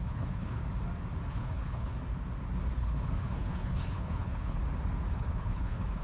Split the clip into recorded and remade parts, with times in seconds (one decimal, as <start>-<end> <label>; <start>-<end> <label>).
0.0-0.6 remade; 0.6-1.3 recorded; 1.3-2.0 remade; 2.0-2.7 recorded; 2.7-4.6 remade; 4.6-5.1 recorded; 5.1-6.0 remade